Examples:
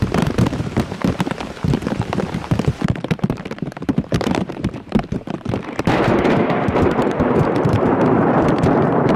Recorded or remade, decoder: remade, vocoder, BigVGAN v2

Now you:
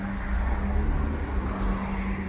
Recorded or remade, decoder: recorded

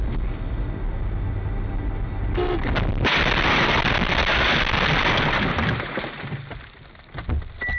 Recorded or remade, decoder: recorded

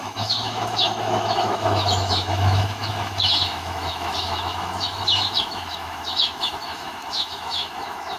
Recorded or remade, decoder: remade, autoencoder, DAC-VAE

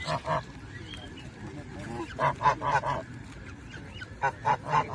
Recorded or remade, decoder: recorded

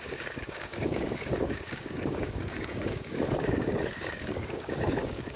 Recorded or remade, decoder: remade, codec, DAC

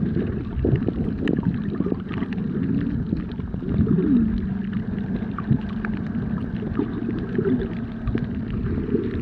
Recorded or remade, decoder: recorded